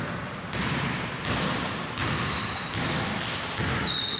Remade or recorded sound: recorded